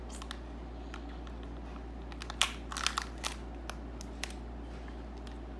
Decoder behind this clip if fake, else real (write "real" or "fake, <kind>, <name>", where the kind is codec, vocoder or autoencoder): real